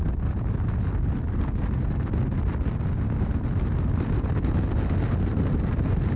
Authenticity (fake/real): real